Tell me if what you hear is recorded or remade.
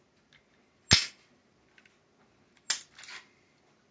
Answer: recorded